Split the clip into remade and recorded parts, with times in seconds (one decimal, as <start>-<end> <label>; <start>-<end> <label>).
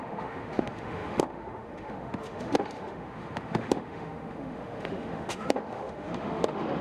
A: 0.0-6.8 remade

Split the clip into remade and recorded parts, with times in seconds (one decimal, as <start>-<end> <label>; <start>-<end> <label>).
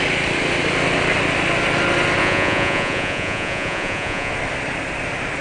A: 0.0-2.2 recorded; 2.2-4.3 remade; 4.3-5.4 recorded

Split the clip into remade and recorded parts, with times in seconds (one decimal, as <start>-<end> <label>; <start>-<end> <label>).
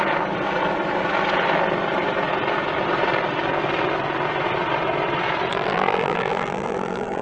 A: 0.0-5.5 recorded; 5.5-7.2 remade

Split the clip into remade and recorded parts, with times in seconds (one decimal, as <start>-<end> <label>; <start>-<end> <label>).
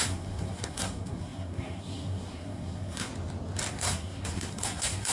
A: 0.0-3.1 remade; 3.1-3.7 recorded; 3.7-5.1 remade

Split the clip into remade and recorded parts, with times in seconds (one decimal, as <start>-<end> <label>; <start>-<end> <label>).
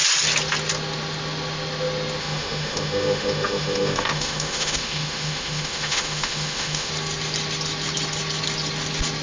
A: 0.0-2.2 recorded; 2.2-6.9 remade; 6.9-9.2 recorded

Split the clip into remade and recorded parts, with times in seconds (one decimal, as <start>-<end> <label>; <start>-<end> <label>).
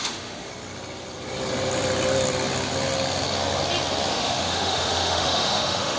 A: 0.0-0.5 remade; 0.5-4.1 recorded; 4.1-6.0 remade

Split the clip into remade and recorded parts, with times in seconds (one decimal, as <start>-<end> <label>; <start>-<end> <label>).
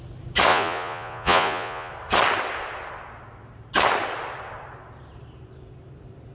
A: 0.0-0.5 recorded; 0.5-1.9 remade; 1.9-6.3 recorded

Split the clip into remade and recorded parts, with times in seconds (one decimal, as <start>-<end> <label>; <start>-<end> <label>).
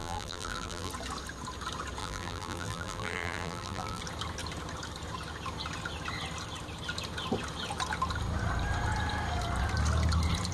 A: 0.0-0.9 remade; 0.9-2.0 recorded; 2.0-4.0 remade; 4.0-10.5 recorded